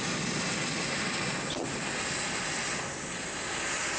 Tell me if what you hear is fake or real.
real